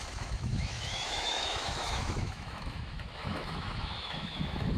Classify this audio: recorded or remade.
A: remade